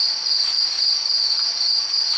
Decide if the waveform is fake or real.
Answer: real